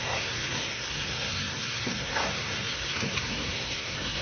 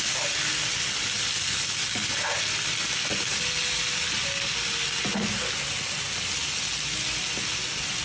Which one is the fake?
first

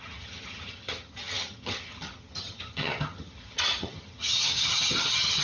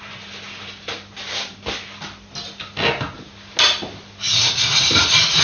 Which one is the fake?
first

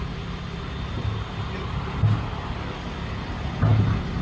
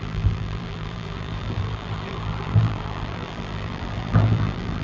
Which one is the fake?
second